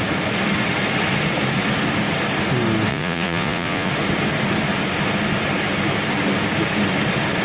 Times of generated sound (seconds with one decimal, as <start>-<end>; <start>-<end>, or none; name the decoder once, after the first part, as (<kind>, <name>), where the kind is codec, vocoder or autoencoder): 2.9-3.9 (vocoder, Vocos)